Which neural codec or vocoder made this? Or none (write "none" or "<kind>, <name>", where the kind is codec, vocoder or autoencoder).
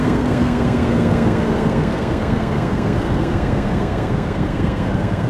codec, SNAC